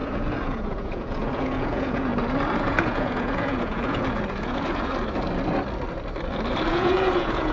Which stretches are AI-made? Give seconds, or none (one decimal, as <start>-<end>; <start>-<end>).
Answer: 0.0-2.1; 2.6-4.9; 6.7-7.5